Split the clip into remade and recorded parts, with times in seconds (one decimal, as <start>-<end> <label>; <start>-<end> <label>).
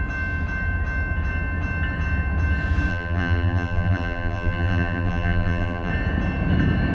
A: 0.0-2.9 recorded; 2.9-5.9 remade; 5.9-6.9 recorded